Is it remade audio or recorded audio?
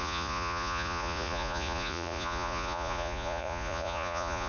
remade